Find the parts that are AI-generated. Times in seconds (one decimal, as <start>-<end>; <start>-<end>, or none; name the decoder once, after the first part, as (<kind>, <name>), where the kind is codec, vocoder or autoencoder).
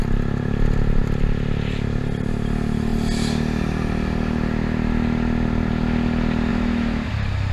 6.5-7.1 (autoencoder, DAC-VAE)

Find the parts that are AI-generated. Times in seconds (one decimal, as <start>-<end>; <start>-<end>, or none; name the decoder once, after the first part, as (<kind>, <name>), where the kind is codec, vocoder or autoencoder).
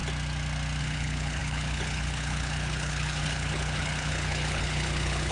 0.8-5.3 (codec, HILCodec)